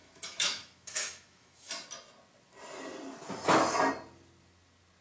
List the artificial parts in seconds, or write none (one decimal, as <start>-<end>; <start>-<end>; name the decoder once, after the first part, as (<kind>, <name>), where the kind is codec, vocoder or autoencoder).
0.0-1.7 (autoencoder, DAC-VAE)